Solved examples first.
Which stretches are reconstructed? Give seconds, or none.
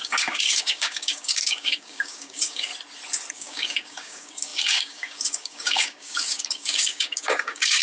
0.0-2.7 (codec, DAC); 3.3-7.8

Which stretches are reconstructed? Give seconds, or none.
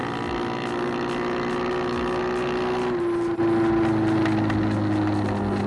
none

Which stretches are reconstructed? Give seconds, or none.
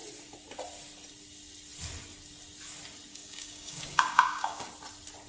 3.1-4.7 (codec, DAC)